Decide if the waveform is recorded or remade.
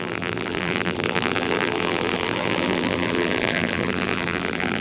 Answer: remade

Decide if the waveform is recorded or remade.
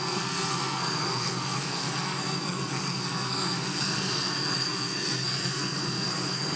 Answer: remade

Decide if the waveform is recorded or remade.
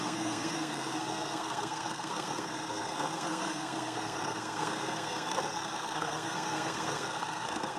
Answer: remade